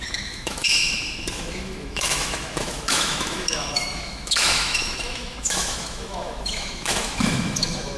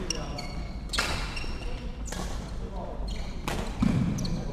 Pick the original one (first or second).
second